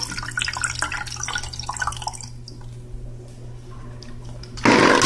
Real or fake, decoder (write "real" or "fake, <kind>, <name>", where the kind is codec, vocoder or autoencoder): real